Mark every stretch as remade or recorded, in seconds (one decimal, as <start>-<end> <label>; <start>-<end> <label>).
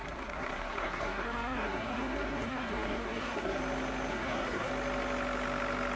0.0-3.6 remade; 3.6-4.1 recorded; 4.1-4.7 remade; 4.7-6.0 recorded